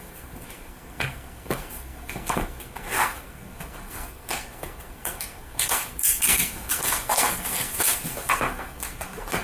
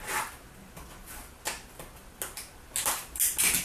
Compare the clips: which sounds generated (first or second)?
first